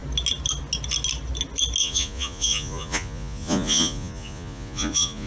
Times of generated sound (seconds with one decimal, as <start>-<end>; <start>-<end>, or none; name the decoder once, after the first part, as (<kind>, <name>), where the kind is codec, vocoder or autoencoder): 1.8-5.3 (vocoder, Vocos)